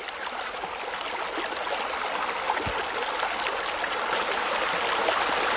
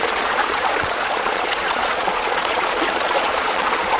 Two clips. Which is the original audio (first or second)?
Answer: first